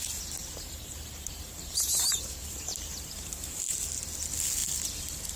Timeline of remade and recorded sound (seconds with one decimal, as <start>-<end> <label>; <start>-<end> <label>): 0.0-0.4 recorded; 0.4-3.6 remade; 3.6-5.4 recorded